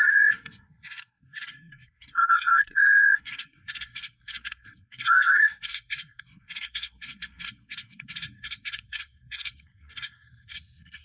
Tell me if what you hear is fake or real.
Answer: fake